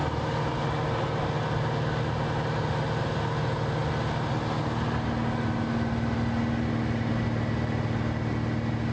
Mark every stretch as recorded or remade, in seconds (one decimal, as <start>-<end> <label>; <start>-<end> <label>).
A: 0.0-8.9 recorded